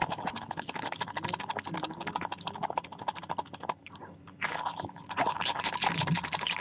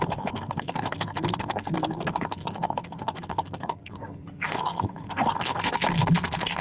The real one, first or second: first